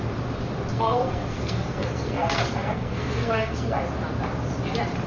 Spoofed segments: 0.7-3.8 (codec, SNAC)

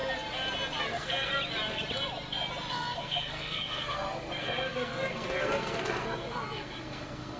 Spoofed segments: 0.8-1.3 (codec, SNAC); 2.7-7.4

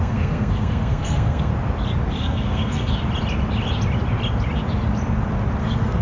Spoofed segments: 0.0-1.5 (codec, SNAC); 2.1-2.9; 5.6-6.0